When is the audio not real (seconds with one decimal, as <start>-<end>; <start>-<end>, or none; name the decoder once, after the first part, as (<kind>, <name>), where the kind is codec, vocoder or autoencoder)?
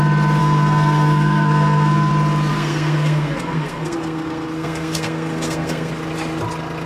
0.4-2.1 (codec, SNAC); 2.5-5.9